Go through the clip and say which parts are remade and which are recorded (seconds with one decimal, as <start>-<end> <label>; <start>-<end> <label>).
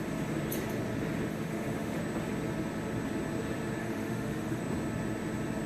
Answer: 0.0-1.3 recorded; 1.3-2.0 remade; 2.0-3.8 recorded; 3.8-4.6 remade; 4.6-5.7 recorded